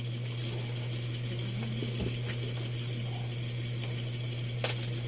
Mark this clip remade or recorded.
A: recorded